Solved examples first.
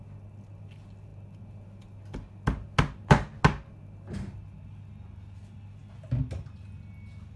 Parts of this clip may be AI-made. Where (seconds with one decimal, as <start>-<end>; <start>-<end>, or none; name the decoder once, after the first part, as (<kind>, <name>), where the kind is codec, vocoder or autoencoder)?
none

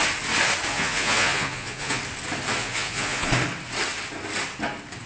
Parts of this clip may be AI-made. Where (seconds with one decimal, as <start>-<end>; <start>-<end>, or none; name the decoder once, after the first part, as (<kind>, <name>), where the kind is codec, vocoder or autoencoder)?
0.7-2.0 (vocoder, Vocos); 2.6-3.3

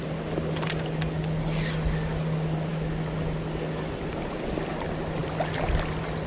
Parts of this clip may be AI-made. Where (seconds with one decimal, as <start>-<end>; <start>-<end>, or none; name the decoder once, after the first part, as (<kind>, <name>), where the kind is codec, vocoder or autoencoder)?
none

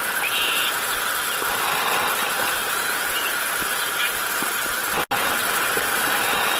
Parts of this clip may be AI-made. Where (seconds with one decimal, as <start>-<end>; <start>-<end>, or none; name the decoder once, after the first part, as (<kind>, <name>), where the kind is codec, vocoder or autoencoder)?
0.0-1.1 (vocoder, Vocos); 2.2-4.3

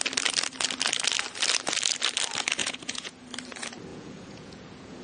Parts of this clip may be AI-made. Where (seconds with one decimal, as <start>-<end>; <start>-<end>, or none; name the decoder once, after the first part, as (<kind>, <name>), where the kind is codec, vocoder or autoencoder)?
2.6-3.2 (vocoder, Vocos); 3.9-5.0

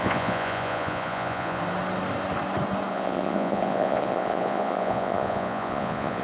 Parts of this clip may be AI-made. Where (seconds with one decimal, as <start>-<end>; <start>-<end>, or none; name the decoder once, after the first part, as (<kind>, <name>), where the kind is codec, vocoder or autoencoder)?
0.0-1.6 (vocoder, Vocos); 2.9-6.2

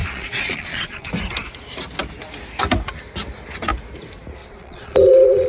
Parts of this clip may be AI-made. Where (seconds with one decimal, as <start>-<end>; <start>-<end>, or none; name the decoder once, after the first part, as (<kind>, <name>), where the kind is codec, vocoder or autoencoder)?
0.0-1.1 (vocoder, Vocos); 4.4-5.5

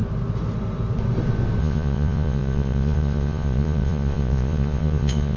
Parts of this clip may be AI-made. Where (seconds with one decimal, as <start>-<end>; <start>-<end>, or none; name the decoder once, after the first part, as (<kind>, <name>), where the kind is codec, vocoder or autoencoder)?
1.6-5.4 (vocoder, Vocos)